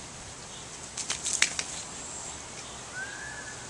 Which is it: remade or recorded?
recorded